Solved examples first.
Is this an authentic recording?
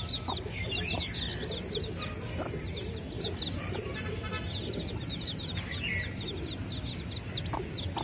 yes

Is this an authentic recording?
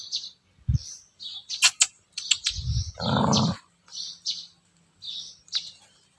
yes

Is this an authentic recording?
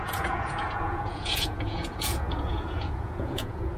no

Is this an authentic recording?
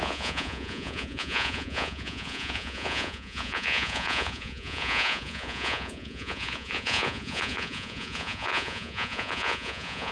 no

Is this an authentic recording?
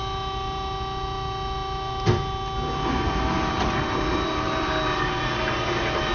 yes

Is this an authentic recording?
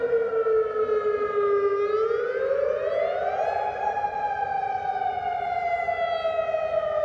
yes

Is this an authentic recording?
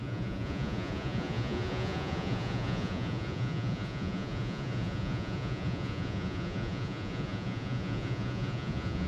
no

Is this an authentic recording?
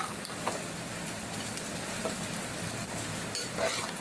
yes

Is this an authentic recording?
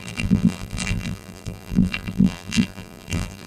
no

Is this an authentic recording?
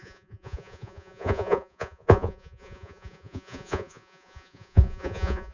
no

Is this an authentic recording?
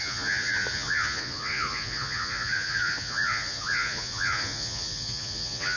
no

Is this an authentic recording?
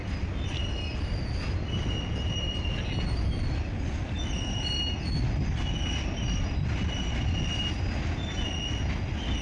yes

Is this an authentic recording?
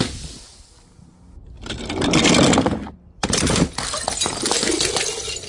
yes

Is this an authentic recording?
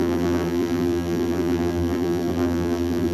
no